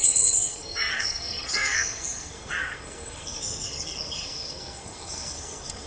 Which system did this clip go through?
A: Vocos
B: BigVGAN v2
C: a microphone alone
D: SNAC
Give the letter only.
D